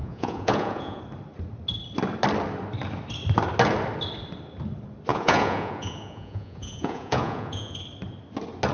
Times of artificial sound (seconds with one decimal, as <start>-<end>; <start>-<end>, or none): 0.0-1.0; 5.1-7.8